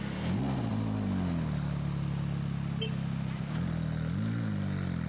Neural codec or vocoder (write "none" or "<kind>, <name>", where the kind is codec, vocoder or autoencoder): none